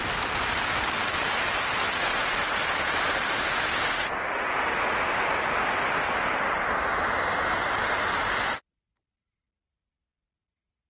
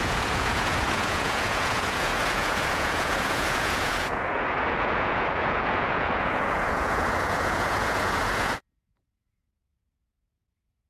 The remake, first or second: second